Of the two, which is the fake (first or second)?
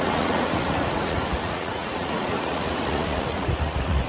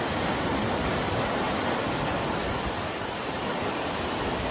first